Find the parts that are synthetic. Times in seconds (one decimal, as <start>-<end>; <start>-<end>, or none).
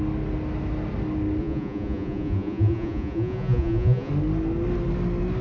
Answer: 1.4-4.1